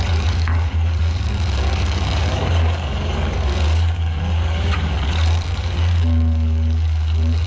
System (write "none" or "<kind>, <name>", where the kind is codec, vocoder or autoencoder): codec, DAC